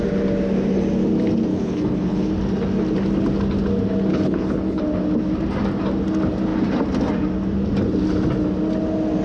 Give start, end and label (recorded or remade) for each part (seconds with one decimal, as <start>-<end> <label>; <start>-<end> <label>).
0.0-1.5 recorded; 1.5-2.3 remade; 2.3-4.1 recorded; 4.1-4.8 remade; 4.8-9.2 recorded